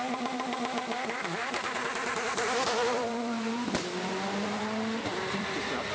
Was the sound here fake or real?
fake